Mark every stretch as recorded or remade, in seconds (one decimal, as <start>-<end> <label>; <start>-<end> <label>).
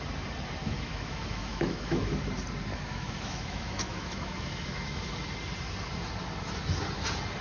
0.0-0.6 recorded; 0.6-2.2 remade; 2.2-2.7 recorded; 2.7-5.1 remade; 5.1-7.4 recorded